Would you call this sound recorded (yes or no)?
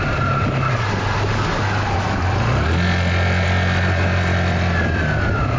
yes